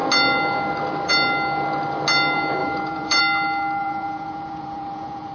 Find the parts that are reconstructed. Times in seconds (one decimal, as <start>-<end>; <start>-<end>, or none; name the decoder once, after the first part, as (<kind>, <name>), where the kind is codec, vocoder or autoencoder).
2.6-3.2 (vocoder, Vocos); 3.8-5.3